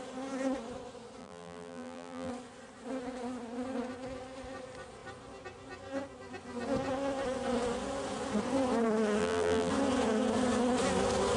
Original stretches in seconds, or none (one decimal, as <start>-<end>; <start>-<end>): 0.0-1.2; 2.3-9.2; 9.7-11.4